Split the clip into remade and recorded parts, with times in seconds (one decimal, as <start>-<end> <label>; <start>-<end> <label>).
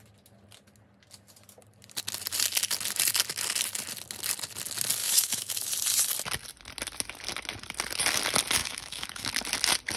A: 0.0-5.0 recorded; 5.0-5.7 remade; 5.7-8.6 recorded; 8.6-9.3 remade; 9.3-10.0 recorded